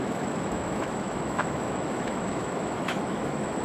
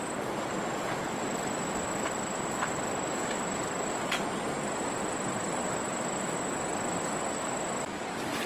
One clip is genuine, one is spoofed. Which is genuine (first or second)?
second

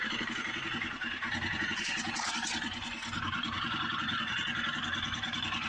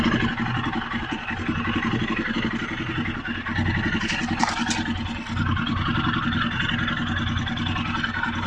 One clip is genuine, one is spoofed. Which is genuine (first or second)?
second